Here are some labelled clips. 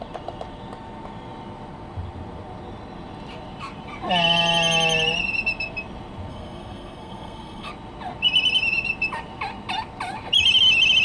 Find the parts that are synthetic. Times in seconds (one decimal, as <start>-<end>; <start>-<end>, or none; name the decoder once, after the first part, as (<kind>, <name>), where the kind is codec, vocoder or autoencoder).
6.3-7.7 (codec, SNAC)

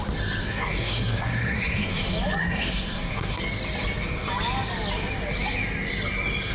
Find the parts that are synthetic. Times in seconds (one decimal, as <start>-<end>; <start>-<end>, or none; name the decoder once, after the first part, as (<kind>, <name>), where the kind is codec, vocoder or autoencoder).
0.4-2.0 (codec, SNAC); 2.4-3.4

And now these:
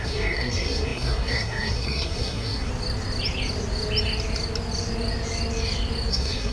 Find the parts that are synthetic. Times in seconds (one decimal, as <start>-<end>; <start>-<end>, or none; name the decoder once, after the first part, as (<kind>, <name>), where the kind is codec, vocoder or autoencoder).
0.0-2.7 (codec, SNAC); 6.1-6.5

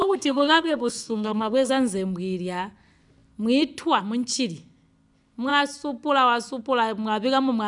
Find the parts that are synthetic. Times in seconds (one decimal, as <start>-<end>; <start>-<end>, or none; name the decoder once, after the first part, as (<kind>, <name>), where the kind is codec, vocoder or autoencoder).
0.0-1.7 (codec, SNAC)